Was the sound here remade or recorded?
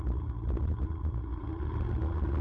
recorded